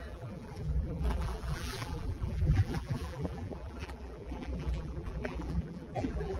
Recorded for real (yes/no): no